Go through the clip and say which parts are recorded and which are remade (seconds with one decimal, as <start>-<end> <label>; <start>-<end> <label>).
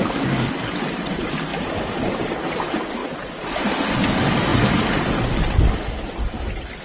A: 0.0-6.8 recorded